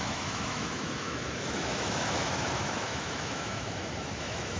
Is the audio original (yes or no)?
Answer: no